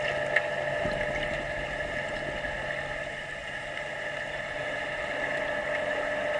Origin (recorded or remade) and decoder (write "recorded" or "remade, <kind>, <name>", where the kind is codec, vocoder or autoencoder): recorded